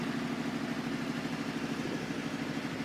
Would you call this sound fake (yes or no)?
no